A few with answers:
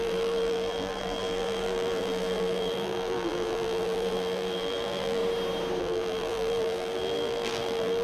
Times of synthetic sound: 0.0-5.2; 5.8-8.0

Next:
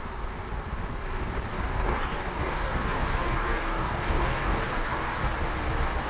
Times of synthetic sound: 1.5-5.2

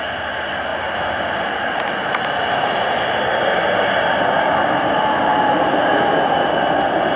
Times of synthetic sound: 0.7-2.7; 5.3-6.2